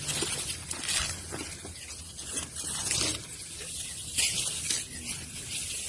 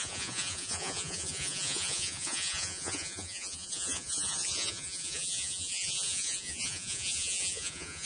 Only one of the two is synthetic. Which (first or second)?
second